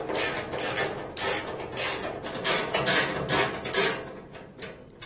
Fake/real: real